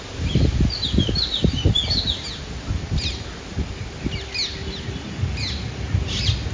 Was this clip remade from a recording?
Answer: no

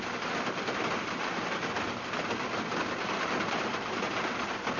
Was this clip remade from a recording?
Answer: no